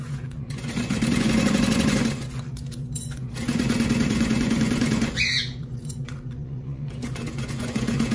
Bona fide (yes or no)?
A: no